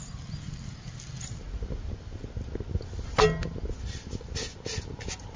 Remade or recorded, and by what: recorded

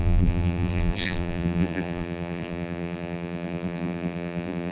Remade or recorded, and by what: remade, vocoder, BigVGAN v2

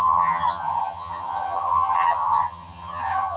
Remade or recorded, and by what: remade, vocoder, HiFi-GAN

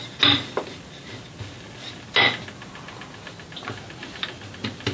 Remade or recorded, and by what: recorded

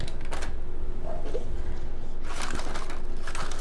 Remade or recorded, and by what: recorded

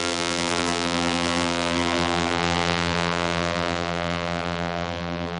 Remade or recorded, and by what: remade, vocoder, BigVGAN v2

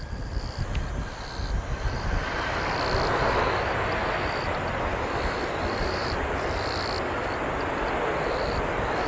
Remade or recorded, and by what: recorded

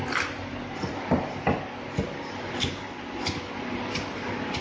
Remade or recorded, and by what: recorded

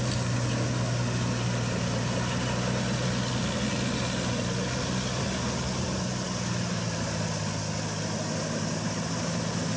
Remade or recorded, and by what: recorded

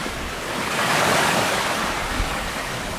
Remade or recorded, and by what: remade, codec, DAC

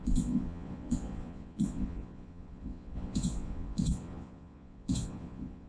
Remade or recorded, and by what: remade, vocoder, Vocos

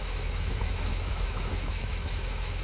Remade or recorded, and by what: remade, autoencoder, DAC-VAE